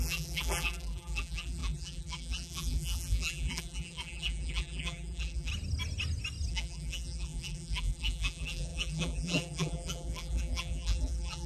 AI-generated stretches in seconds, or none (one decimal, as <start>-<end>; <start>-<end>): 0.0-5.5; 6.5-11.5